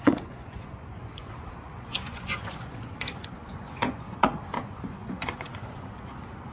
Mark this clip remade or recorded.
remade